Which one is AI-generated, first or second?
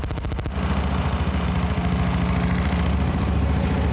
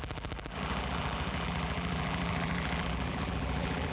second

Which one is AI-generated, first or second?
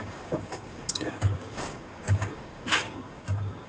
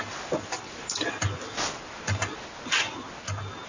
first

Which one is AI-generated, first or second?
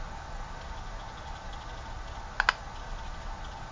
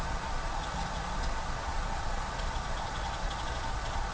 second